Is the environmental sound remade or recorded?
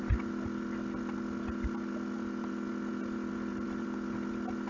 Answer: recorded